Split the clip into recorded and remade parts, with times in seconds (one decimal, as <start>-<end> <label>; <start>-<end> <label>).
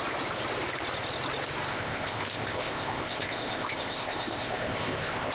0.0-1.7 recorded; 1.7-5.3 remade